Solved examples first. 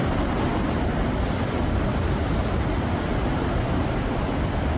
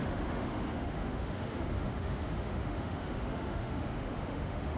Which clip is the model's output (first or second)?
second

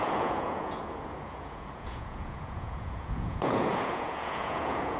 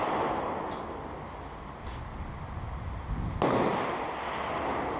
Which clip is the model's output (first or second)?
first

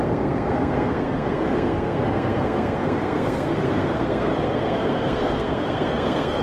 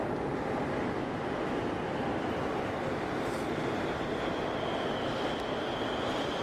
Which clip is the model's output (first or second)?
first